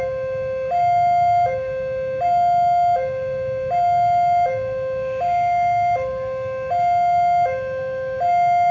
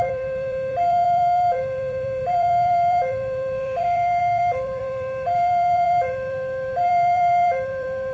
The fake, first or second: second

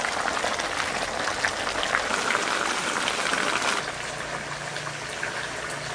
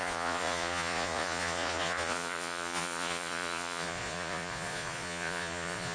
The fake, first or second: second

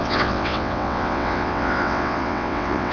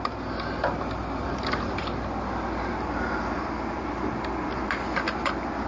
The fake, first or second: first